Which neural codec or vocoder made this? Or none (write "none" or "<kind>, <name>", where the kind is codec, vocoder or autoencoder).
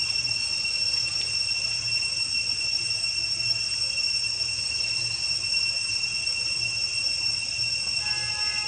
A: none